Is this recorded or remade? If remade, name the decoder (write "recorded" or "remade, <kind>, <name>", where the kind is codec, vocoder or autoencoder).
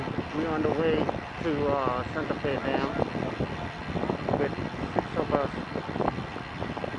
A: recorded